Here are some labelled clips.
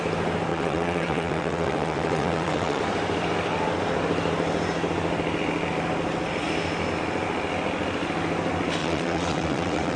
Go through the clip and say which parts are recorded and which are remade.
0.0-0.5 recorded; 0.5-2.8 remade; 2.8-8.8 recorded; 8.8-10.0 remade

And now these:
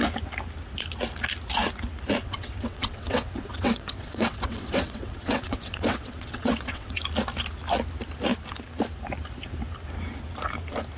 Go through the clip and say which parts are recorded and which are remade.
0.0-2.2 recorded; 2.2-7.0 remade; 7.0-11.0 recorded

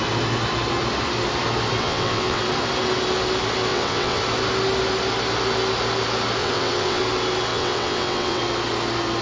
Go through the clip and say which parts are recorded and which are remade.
0.0-1.8 recorded; 1.8-2.4 remade; 2.4-3.7 recorded; 3.7-4.2 remade; 4.2-6.4 recorded; 6.4-7.0 remade; 7.0-7.5 recorded; 7.5-8.4 remade; 8.4-9.2 recorded

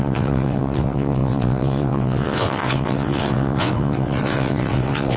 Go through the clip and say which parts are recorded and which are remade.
0.0-5.2 remade

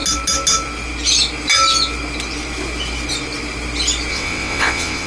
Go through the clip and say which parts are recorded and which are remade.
0.0-4.1 recorded; 4.1-5.1 remade

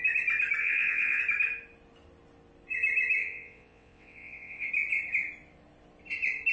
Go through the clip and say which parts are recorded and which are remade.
0.0-0.6 recorded; 0.6-1.2 remade; 1.2-3.2 recorded; 3.2-4.7 remade; 4.7-6.5 recorded

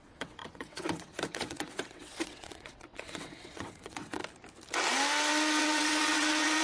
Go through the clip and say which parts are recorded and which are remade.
0.0-4.2 remade; 4.2-5.6 recorded; 5.6-6.6 remade